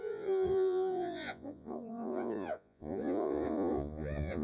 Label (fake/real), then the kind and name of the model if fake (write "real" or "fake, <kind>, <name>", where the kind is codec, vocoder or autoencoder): fake, vocoder, Vocos